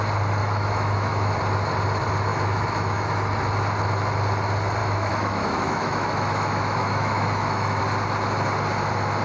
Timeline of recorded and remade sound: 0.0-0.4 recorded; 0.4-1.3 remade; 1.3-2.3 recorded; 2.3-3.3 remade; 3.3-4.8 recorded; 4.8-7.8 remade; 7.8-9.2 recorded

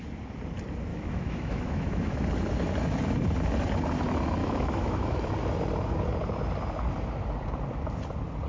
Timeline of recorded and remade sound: 0.0-0.9 recorded; 0.9-2.2 remade; 2.2-4.4 recorded; 4.4-5.2 remade; 5.2-8.5 recorded

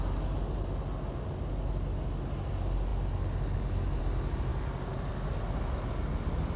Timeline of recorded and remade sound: 0.0-6.6 recorded

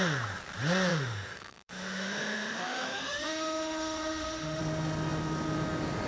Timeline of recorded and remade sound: 0.0-0.9 recorded; 0.9-4.6 remade; 4.6-6.1 recorded

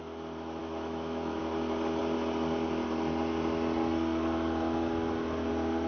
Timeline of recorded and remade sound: 0.0-0.6 recorded; 0.6-1.4 remade; 1.4-5.9 recorded

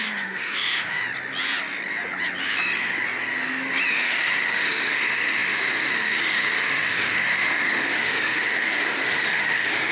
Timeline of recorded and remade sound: 0.0-1.0 remade; 1.0-3.9 recorded; 3.9-9.9 remade